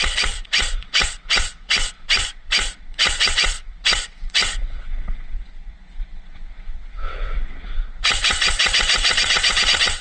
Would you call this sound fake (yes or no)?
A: yes